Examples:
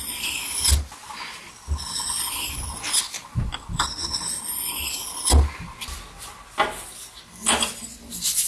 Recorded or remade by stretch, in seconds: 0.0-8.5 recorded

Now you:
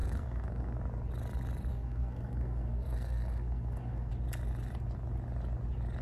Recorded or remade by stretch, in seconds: 0.0-0.8 remade; 0.8-1.7 recorded; 1.7-4.1 remade; 4.1-6.0 recorded

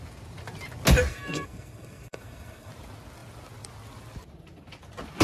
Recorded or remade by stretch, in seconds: 0.0-1.1 recorded; 1.1-2.7 remade; 2.7-5.2 recorded

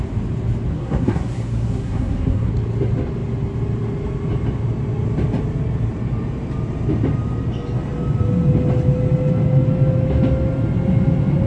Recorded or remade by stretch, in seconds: 0.0-0.7 recorded; 0.7-2.5 remade; 2.5-11.5 recorded

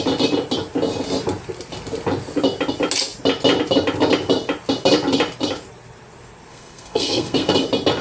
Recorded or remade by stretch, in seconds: 0.0-6.5 recorded; 6.5-7.5 remade; 7.5-8.0 recorded

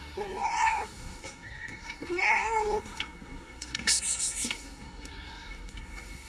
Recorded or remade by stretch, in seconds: 0.0-6.3 remade

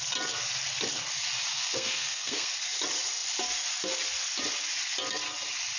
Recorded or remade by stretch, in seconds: 0.0-1.5 recorded; 1.5-2.5 remade; 2.5-5.8 recorded